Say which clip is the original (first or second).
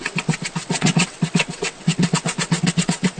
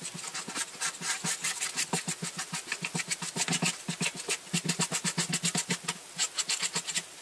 second